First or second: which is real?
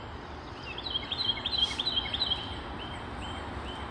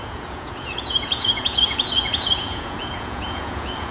first